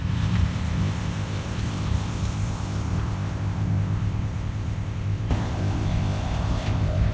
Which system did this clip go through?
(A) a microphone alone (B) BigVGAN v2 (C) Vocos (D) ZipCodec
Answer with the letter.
D